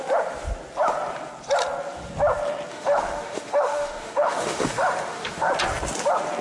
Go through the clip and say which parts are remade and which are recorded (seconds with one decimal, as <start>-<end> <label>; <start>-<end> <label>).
0.0-2.7 recorded; 2.7-5.5 remade; 5.5-6.4 recorded